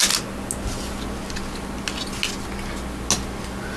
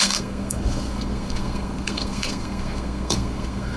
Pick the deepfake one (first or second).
second